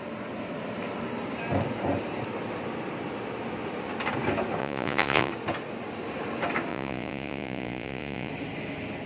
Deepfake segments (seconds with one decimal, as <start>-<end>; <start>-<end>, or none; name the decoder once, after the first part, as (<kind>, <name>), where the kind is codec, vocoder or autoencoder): 4.6-5.3 (vocoder, Vocos); 6.7-8.3